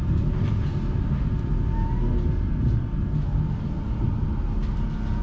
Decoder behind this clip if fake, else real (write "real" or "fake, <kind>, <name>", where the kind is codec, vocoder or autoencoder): real